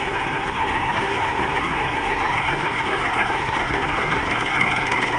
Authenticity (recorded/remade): remade